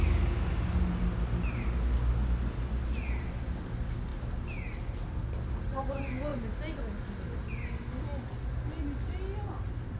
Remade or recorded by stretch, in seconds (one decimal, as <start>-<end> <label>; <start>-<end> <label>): 0.0-10.0 recorded